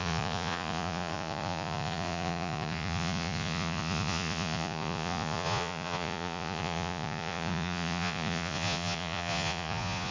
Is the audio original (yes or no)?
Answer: no